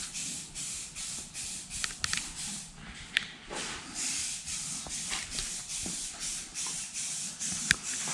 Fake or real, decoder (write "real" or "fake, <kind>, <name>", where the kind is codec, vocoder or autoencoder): fake, vocoder, BigVGAN v2